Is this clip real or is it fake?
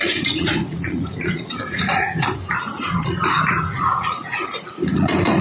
fake